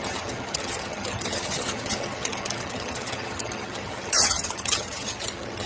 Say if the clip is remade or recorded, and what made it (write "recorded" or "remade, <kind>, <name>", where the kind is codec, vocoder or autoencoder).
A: remade, vocoder, HiFi-GAN